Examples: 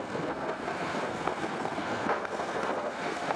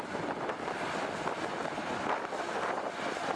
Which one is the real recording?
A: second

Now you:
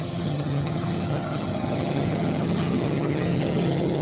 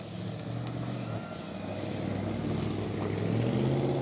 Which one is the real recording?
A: second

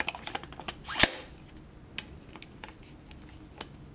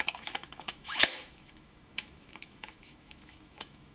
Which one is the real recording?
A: first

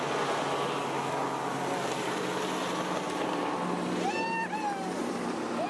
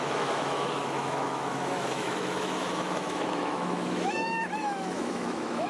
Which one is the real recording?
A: first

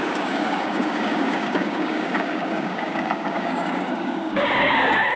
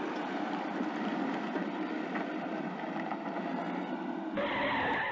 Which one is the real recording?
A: second